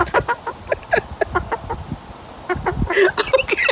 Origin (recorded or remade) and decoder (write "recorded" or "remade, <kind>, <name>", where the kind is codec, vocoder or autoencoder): recorded